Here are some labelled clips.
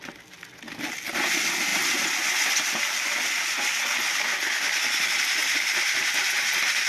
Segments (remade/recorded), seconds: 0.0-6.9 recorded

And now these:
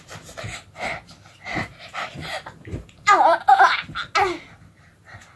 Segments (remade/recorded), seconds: 0.0-1.5 recorded; 1.5-3.1 remade; 3.1-5.4 recorded

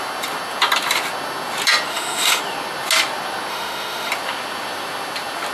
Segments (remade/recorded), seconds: 0.0-1.9 recorded; 1.9-2.4 remade; 2.4-3.5 recorded; 3.5-4.1 remade; 4.1-5.5 recorded